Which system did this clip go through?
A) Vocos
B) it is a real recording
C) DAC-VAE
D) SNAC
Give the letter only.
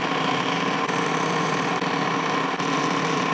B